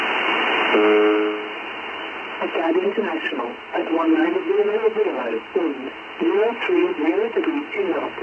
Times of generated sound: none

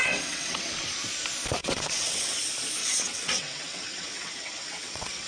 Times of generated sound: 0.0-0.6 (vocoder, WaveNeXt); 1.6-2.4; 2.8-5.3